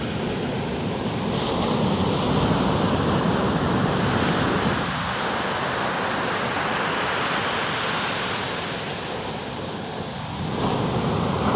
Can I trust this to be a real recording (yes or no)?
yes